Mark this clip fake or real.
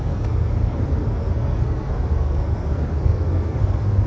fake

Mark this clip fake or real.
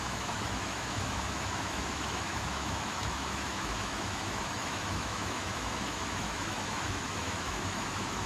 fake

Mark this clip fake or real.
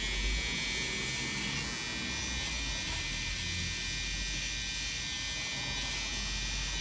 real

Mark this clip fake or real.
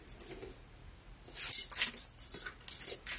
real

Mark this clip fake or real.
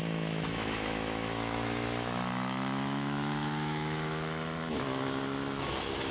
fake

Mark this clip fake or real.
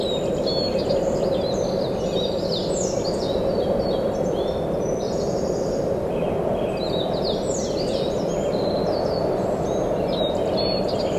real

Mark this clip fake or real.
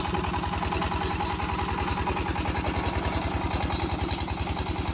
real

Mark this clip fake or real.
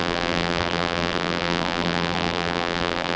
fake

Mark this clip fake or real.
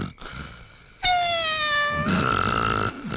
real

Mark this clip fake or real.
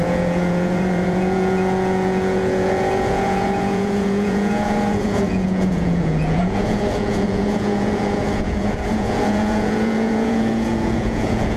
fake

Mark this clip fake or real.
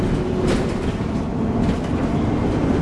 real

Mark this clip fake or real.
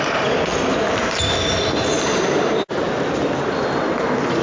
real